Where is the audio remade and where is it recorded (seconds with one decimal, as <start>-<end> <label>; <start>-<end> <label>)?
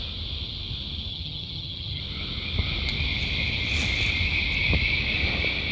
0.0-1.1 recorded; 1.1-2.0 remade; 2.0-5.7 recorded